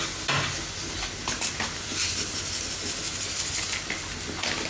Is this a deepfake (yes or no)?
no